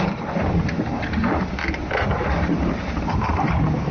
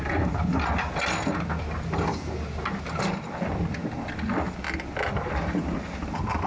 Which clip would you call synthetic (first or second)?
first